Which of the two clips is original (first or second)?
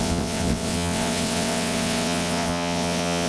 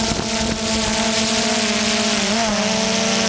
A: second